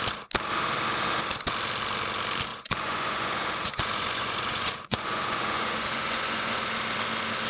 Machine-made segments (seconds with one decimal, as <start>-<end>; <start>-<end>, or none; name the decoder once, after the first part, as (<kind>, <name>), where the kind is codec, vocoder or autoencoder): 2.5-6.6 (vocoder, Vocos)